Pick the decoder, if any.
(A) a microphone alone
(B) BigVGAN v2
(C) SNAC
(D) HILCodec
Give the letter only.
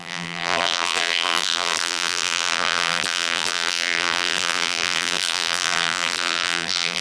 B